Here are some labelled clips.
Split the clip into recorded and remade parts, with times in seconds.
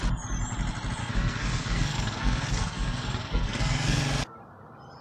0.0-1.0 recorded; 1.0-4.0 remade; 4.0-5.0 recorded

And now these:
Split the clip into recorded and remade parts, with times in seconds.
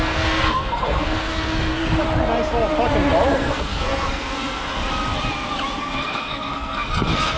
0.0-1.8 remade; 1.8-3.3 recorded; 3.3-4.8 remade; 4.8-5.8 recorded; 5.8-7.4 remade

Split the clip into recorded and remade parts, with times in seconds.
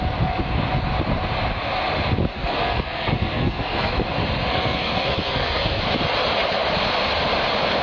0.0-2.3 recorded; 2.3-3.9 remade; 3.9-4.5 recorded; 4.5-5.8 remade; 5.8-7.8 recorded